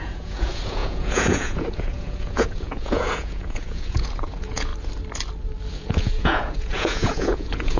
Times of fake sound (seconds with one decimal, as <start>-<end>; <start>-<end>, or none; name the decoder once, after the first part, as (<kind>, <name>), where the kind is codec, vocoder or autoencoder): 0.0-4.7 (vocoder, Vocos); 5.7-7.8